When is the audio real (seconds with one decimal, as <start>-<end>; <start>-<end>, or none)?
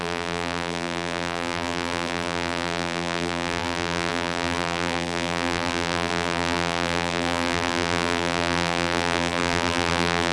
none